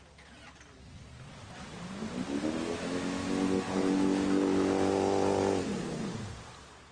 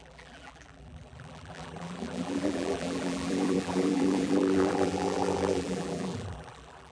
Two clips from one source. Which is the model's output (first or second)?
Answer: second